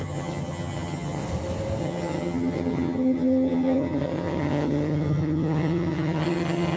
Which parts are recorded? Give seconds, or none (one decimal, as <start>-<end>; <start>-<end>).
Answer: 1.2-1.8